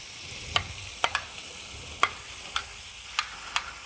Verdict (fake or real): real